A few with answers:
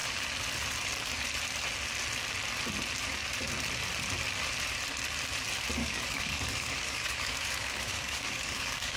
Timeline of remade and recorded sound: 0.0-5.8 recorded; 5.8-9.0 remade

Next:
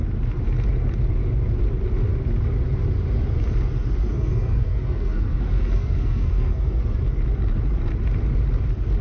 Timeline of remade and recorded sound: 0.0-4.1 recorded; 4.1-6.8 remade; 6.8-9.0 recorded

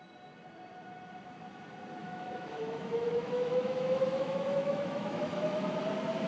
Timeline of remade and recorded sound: 0.0-2.0 recorded; 2.0-5.8 remade; 5.8-6.3 recorded